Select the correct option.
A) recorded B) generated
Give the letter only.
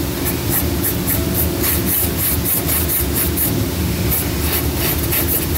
A